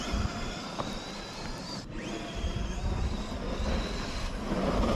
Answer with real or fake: real